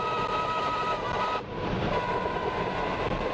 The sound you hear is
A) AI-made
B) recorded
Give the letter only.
B